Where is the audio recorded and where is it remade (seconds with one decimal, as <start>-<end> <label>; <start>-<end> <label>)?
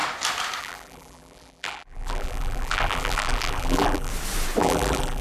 0.0-0.6 recorded; 0.6-4.1 remade; 4.1-4.6 recorded; 4.6-5.2 remade